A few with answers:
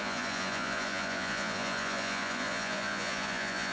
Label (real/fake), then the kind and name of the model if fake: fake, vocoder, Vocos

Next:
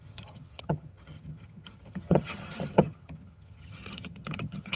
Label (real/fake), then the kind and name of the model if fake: fake, vocoder, HiFi-GAN